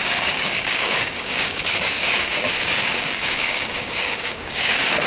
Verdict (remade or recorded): remade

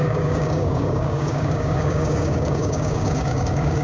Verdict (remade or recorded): remade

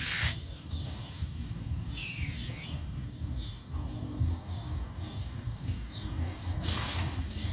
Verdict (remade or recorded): remade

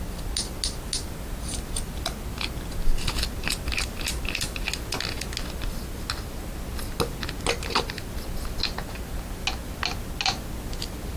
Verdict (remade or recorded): recorded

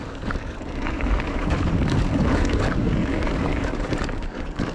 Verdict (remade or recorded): remade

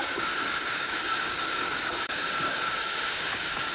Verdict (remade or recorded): remade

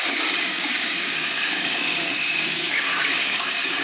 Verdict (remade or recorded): remade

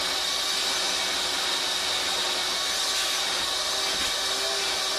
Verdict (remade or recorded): recorded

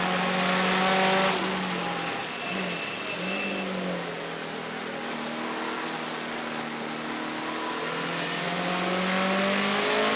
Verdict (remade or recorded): recorded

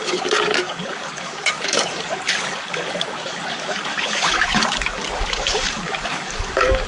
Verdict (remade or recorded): remade